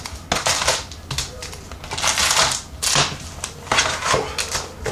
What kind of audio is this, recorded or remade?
recorded